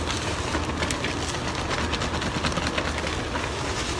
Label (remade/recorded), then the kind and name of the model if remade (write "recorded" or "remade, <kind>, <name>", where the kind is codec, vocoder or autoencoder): recorded